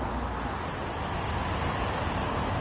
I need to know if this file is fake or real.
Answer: real